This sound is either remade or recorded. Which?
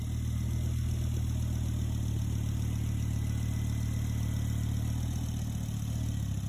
recorded